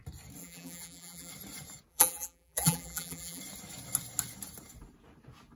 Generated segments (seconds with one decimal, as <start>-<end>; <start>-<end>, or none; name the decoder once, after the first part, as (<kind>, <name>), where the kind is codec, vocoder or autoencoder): 0.4-1.3 (vocoder, BigVGAN v2); 1.9-3.4